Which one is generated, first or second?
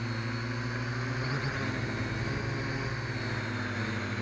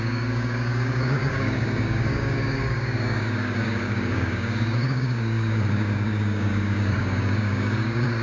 second